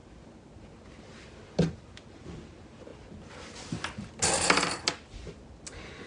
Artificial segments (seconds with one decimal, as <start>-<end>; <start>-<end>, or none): none